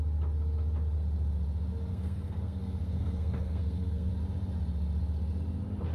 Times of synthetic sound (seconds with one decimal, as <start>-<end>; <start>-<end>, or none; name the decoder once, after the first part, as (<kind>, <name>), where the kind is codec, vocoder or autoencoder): 1.9-4.1 (codec, SNAC)